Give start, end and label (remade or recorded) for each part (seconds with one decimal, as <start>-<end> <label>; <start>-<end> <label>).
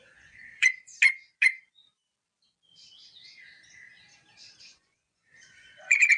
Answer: 0.0-0.9 remade; 0.9-4.6 recorded; 4.6-6.2 remade